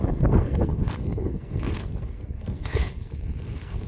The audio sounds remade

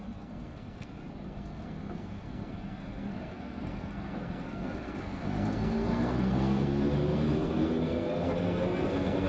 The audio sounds remade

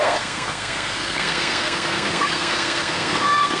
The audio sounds remade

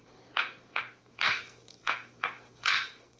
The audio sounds remade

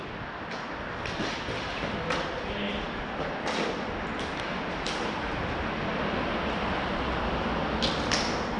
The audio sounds recorded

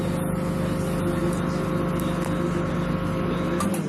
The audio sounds recorded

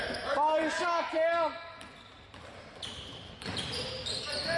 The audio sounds recorded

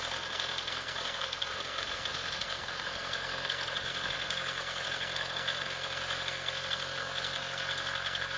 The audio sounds remade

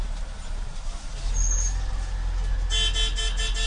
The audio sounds recorded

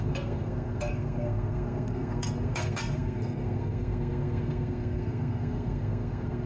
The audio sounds remade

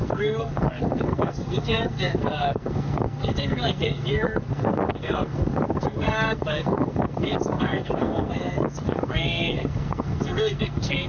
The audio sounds remade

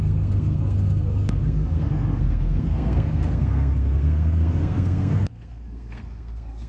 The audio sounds remade